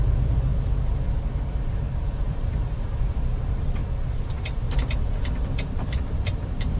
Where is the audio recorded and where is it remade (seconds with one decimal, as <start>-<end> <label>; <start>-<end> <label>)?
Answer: 0.0-0.5 remade; 0.5-1.5 recorded; 1.5-3.8 remade; 3.8-4.3 recorded; 4.3-6.8 remade